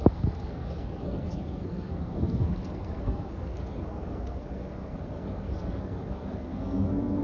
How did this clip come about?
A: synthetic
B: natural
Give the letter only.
A